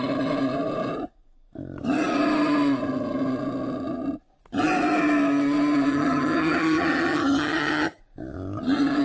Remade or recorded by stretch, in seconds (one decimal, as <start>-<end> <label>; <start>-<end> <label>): 0.0-5.9 recorded; 5.9-8.0 remade; 8.0-9.0 recorded